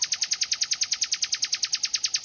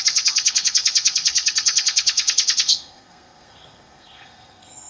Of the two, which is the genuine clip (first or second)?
first